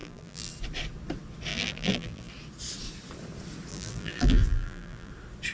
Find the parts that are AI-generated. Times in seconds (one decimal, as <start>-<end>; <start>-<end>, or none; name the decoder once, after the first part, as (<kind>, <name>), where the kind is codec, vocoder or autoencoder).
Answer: 0.0-0.5 (vocoder, BigVGAN v2); 1.5-2.3; 3.7-5.1